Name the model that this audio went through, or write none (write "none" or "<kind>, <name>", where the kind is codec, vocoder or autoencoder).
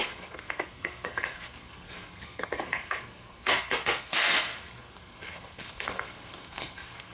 codec, SNAC